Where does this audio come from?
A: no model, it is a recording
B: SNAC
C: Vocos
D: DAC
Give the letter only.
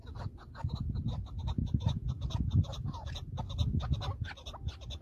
A